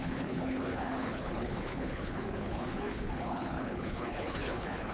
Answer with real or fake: fake